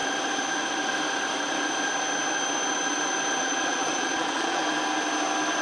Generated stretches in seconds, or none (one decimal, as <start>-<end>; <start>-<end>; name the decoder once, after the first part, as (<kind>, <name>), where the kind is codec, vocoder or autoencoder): 3.4-4.6 (vocoder, Vocos)